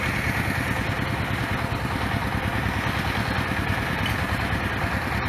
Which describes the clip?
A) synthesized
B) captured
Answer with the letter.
B